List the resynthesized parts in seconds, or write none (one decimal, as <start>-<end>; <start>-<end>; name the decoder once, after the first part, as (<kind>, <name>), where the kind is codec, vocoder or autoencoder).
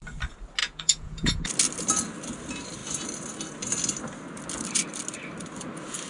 0.6-1.5 (vocoder, Vocos)